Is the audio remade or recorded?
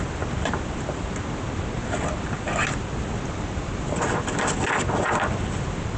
recorded